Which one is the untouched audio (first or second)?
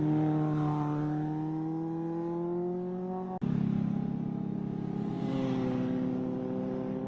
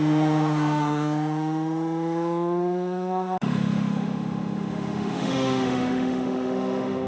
first